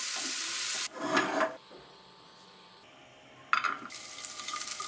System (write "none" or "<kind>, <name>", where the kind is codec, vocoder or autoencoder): vocoder, BigVGAN v2